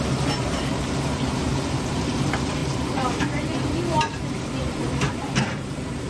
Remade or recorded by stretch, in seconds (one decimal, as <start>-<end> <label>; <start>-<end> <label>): 0.0-6.1 remade